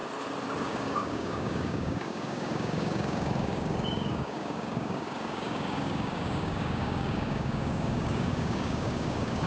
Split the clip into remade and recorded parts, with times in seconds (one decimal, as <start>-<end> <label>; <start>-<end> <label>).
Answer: 0.0-0.6 recorded; 0.6-9.5 remade